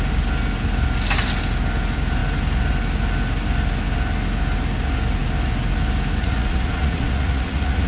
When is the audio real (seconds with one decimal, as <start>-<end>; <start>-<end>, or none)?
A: 0.0-6.2